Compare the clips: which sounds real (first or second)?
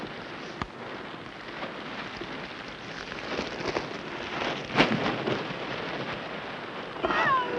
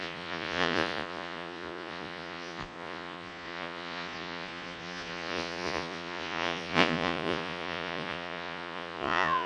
first